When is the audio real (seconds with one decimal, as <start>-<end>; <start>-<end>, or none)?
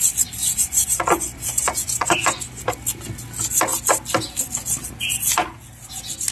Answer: 0.0-0.4; 2.6-6.3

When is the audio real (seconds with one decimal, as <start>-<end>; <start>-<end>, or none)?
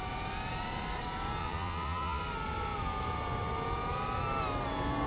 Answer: 0.0-1.4; 2.2-5.1